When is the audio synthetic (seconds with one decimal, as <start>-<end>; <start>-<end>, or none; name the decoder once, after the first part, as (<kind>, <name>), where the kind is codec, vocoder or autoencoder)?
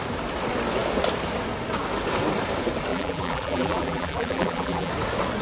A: 2.9-4.9 (vocoder, BigVGAN v2)